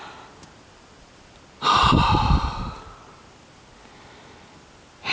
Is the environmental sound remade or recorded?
recorded